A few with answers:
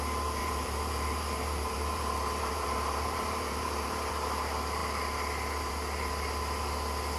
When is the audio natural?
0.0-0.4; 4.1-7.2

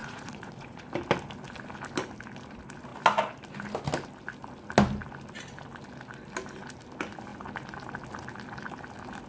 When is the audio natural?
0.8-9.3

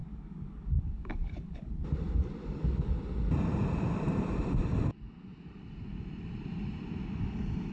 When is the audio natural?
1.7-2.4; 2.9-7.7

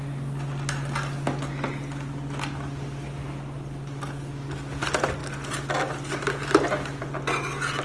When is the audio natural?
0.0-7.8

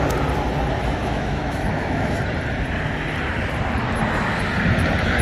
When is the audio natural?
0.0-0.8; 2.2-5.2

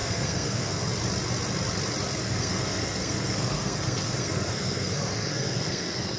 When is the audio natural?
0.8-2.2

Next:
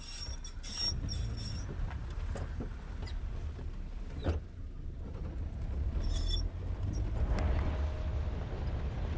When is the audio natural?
0.0-9.2

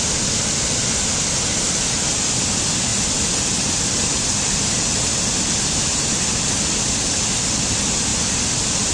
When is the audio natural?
0.0-8.9